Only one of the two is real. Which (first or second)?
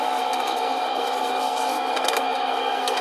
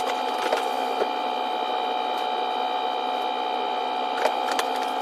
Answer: second